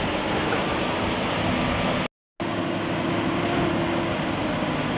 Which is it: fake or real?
real